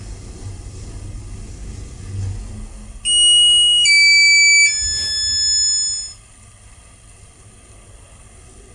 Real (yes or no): yes